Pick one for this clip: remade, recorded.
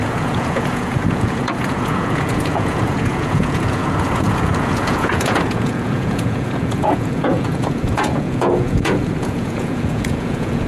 remade